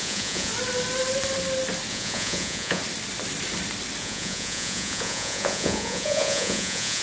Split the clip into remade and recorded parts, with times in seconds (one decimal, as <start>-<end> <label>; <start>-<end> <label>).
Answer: 0.0-0.5 remade; 0.5-1.9 recorded; 1.9-2.8 remade; 2.8-4.0 recorded; 4.0-7.0 remade